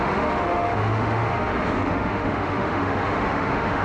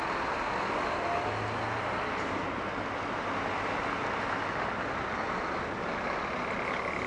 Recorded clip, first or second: second